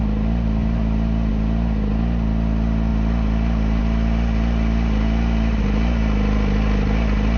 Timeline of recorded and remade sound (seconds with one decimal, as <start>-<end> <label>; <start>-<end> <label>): 0.0-7.4 recorded